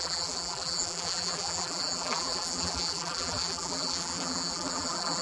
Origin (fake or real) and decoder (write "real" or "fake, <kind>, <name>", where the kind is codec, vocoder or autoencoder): fake, vocoder, BigVGAN v2